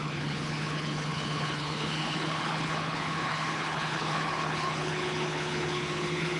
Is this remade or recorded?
remade